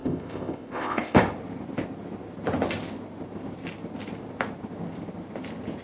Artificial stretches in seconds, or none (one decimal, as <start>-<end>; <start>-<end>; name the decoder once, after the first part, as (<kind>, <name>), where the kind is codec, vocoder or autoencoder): 0.0-1.2 (codec, ZipCodec)